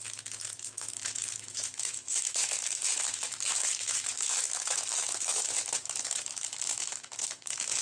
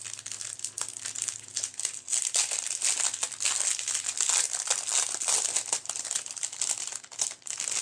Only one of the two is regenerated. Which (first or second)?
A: first